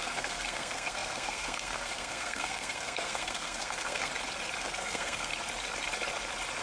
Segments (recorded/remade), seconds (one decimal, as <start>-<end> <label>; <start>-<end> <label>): 0.0-4.1 remade; 4.1-4.6 recorded; 4.6-5.3 remade; 5.3-6.6 recorded